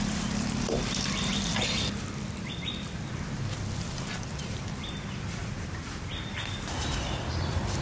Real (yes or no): no